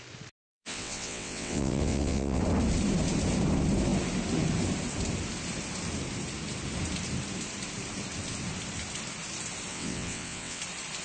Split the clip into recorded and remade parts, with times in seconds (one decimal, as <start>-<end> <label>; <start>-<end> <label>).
0.0-0.4 recorded; 0.4-2.4 remade; 2.4-9.7 recorded; 9.7-10.6 remade; 10.6-11.0 recorded